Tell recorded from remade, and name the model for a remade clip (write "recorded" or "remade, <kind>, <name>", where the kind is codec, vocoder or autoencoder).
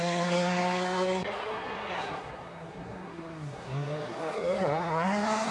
remade, codec, SNAC